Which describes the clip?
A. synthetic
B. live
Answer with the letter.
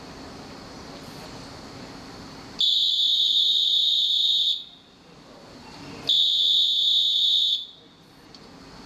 B